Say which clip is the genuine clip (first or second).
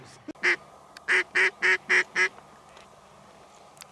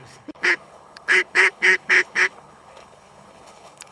first